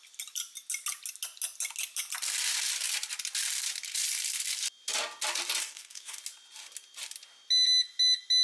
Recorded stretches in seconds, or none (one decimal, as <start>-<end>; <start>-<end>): 0.0-5.6; 6.2-8.4